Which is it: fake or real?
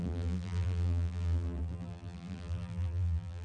fake